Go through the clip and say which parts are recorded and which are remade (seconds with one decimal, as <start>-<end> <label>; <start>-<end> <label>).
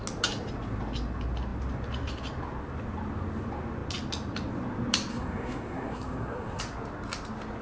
0.0-5.1 recorded; 5.1-6.6 remade; 6.6-7.6 recorded